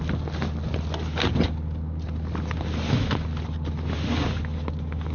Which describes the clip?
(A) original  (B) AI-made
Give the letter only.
A